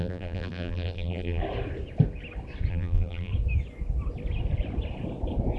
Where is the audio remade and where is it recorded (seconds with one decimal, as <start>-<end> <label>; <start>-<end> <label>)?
0.0-1.4 remade; 1.4-2.7 recorded; 2.7-3.3 remade; 3.3-5.6 recorded